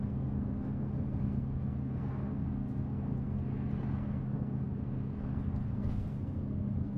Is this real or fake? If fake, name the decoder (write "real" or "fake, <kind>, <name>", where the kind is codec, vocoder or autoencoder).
fake, codec, SNAC